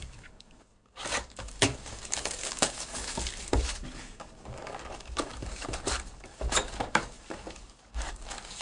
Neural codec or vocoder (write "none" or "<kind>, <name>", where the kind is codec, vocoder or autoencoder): codec, DAC